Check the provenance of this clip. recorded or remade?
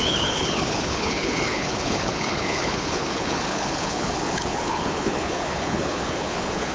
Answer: remade